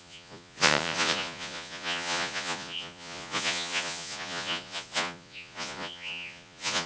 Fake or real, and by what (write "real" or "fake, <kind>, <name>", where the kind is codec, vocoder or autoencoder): fake, vocoder, Vocos